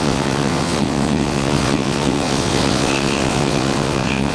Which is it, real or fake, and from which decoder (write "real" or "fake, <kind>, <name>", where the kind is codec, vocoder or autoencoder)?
fake, vocoder, WaveNeXt